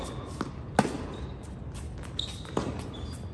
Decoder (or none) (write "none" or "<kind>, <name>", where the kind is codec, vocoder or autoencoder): none